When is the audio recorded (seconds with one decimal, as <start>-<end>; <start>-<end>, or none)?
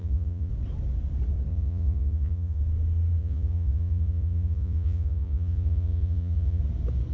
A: 0.5-1.5; 2.6-3.2; 6.6-7.1